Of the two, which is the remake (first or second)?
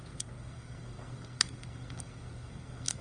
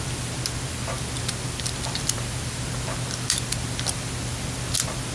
first